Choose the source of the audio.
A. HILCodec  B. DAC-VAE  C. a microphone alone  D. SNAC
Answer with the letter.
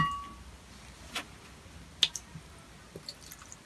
C